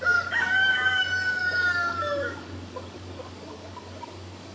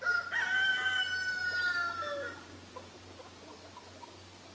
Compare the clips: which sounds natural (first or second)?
second